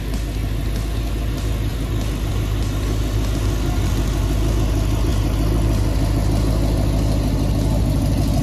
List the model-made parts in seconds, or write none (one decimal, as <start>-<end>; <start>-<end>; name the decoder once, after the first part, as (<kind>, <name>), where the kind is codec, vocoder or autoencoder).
none